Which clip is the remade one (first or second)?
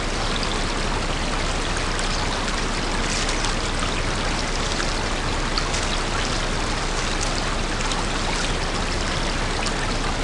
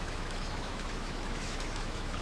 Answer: second